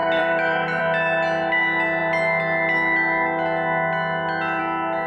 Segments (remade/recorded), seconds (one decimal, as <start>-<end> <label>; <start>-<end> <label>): 0.0-0.8 remade; 0.8-5.1 recorded